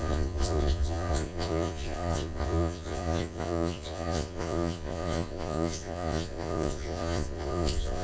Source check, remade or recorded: remade